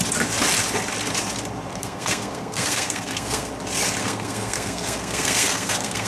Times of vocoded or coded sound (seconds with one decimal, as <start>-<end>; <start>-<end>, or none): 1.7-3.5; 4.0-6.1